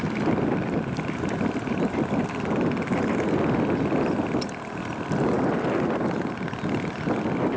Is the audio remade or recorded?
recorded